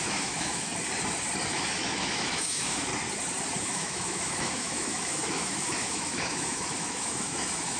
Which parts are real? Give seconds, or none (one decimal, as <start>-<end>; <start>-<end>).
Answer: 0.7-1.5; 2.9-3.6